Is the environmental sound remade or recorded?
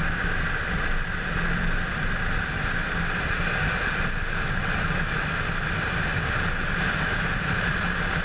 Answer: recorded